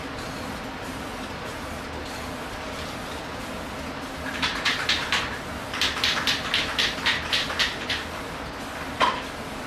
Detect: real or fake fake